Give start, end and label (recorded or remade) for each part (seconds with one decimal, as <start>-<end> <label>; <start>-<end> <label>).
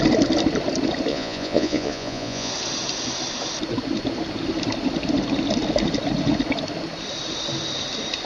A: 0.0-1.1 recorded; 1.1-2.5 remade; 2.5-8.3 recorded